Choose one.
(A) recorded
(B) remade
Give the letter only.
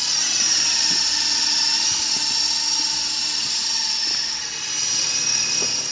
A